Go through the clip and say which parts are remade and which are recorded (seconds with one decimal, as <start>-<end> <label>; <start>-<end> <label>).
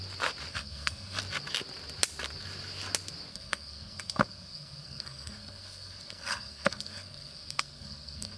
0.0-0.5 recorded; 0.5-1.2 remade; 1.2-3.3 recorded; 3.3-8.4 remade